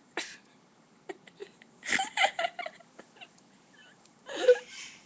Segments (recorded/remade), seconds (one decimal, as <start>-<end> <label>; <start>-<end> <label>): 0.0-5.1 recorded